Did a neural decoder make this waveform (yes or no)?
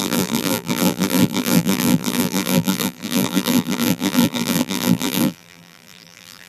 yes